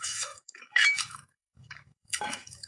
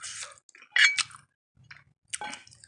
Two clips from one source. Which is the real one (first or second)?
second